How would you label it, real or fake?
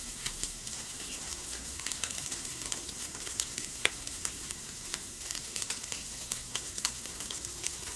fake